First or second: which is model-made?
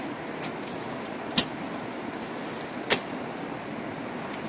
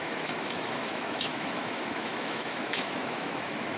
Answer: second